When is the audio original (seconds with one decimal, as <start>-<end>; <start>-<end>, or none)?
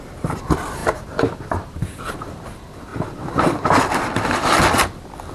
0.0-5.3